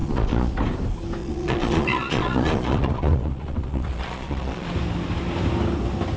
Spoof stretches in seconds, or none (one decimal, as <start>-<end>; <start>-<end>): 0.0-0.5; 1.2-4.7